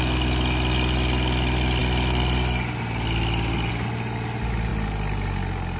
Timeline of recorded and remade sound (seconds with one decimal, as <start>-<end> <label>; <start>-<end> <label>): 0.0-5.8 recorded